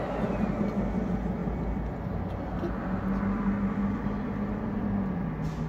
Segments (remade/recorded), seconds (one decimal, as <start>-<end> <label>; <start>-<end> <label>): 0.0-5.7 recorded